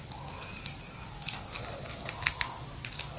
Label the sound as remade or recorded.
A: recorded